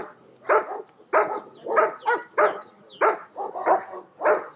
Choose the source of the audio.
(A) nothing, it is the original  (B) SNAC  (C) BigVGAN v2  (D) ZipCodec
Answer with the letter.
A